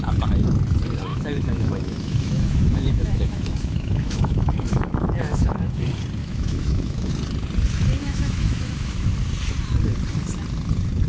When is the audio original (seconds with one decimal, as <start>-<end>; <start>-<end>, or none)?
0.0-1.1; 5.8-6.2; 7.1-8.0; 9.1-11.1